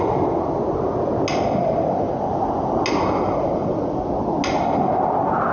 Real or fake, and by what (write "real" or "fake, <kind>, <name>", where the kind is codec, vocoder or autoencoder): real